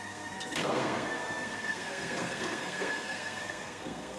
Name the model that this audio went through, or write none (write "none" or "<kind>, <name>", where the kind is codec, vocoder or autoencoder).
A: codec, SNAC